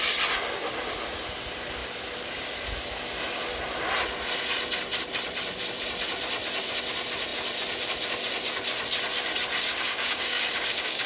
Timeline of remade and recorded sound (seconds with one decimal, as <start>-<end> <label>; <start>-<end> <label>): 0.0-9.6 recorded; 9.6-11.1 remade